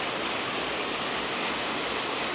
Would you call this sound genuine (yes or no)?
yes